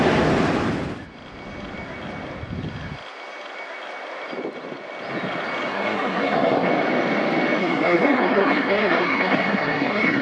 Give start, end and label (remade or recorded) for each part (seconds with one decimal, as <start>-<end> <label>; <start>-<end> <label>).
0.0-5.7 recorded; 5.7-6.7 remade; 6.7-7.6 recorded; 7.6-10.2 remade